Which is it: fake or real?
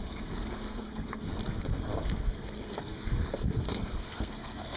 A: fake